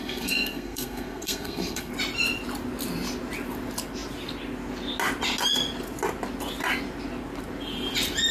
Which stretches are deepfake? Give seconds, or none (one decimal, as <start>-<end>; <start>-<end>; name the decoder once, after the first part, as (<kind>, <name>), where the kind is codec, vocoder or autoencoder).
0.0-1.9 (codec, SNAC)